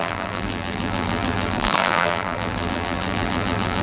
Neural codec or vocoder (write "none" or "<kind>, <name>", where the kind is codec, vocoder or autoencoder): vocoder, BigVGAN v2